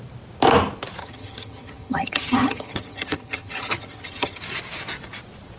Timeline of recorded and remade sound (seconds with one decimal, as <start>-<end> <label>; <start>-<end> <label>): 0.0-1.0 recorded; 1.0-4.4 remade; 4.4-5.6 recorded